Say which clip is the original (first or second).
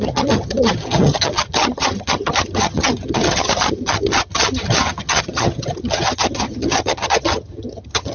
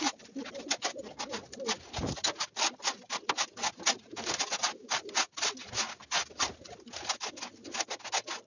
second